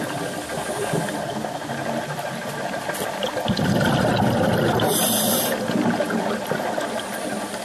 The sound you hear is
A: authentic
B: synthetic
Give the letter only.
A